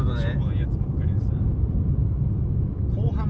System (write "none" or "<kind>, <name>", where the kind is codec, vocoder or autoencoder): vocoder, Vocos